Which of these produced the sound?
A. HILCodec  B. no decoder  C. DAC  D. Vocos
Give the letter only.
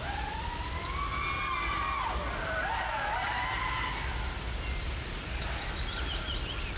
B